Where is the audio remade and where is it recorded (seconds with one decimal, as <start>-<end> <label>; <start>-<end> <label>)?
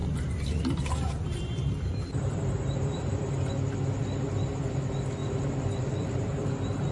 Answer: 0.0-3.5 remade; 3.5-5.2 recorded; 5.2-6.5 remade; 6.5-6.9 recorded